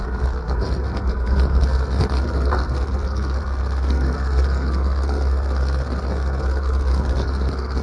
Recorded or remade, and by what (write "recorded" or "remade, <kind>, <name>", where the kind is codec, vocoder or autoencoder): remade, codec, SNAC